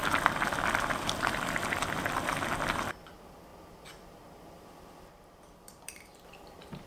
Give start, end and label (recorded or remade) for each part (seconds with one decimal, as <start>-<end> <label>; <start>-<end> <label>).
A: 0.0-2.7 recorded; 2.7-3.5 remade; 3.5-5.1 recorded; 5.1-6.9 remade